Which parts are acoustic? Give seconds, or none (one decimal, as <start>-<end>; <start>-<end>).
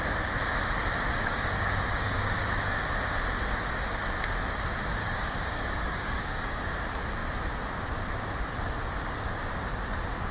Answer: 0.0-1.2; 2.8-5.0; 6.6-10.3